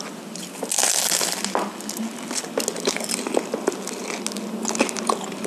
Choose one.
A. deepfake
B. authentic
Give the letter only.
B